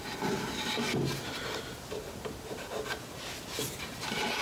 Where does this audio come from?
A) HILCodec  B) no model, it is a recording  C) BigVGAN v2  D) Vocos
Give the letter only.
B